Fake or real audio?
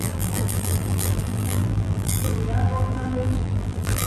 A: fake